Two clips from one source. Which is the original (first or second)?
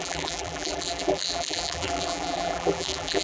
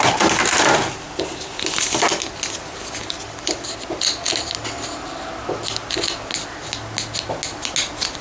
second